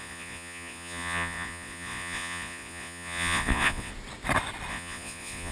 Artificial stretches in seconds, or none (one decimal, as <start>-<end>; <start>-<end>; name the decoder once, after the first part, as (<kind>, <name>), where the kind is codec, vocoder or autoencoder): 0.0-3.9 (vocoder, Vocos); 4.7-5.5